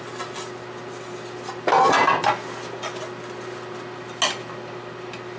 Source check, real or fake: real